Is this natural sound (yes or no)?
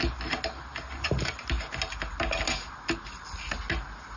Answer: yes